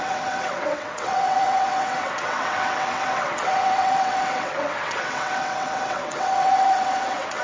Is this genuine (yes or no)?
no